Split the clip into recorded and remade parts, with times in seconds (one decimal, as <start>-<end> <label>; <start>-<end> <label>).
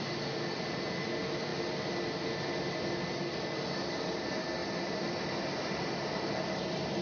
0.0-7.0 recorded